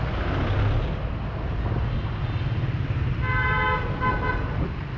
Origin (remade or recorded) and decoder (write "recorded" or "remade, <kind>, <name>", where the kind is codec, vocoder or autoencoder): recorded